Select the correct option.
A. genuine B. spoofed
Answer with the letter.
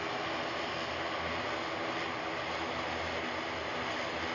A